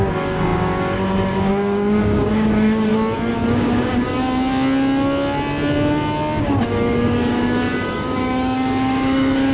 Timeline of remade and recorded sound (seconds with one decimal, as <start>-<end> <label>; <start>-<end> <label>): 0.0-2.9 remade; 2.9-3.5 recorded; 3.5-4.1 remade; 4.1-6.4 recorded; 6.4-9.5 remade